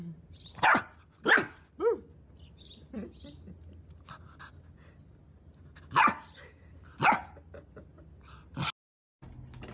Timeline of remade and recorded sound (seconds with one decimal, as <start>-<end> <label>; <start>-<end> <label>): 0.0-9.7 recorded